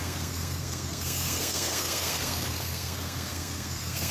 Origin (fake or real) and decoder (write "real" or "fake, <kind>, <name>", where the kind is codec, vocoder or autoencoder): fake, codec, SNAC